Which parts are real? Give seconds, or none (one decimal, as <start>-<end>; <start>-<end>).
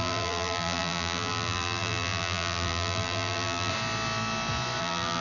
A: 3.7-4.8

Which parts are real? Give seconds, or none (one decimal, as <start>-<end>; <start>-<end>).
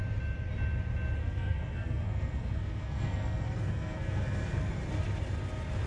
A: 0.0-1.2; 4.7-5.9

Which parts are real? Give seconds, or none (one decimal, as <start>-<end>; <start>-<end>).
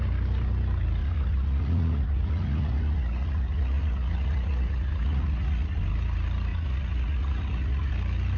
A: 0.0-1.0; 5.8-6.5; 7.9-8.4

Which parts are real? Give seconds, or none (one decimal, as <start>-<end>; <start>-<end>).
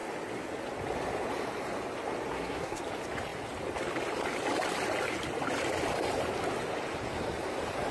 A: 0.0-2.3; 2.8-7.9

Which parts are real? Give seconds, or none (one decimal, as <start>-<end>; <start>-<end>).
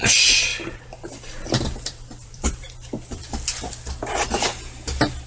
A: 0.0-0.5; 3.7-5.3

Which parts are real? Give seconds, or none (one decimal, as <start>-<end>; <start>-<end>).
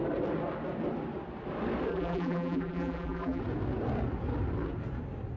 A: 0.0-1.9; 3.4-5.4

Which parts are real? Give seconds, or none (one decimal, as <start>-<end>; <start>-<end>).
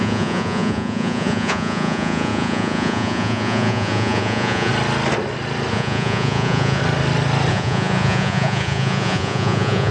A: 4.7-5.7; 6.8-7.5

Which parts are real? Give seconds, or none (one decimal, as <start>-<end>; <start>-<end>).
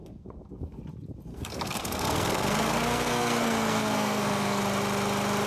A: 0.8-1.3; 4.6-5.5